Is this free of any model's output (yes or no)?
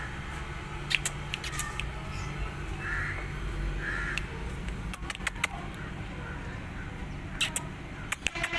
yes